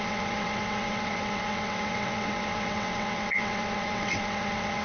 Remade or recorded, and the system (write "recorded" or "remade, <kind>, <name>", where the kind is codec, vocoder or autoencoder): remade, vocoder, WaveNeXt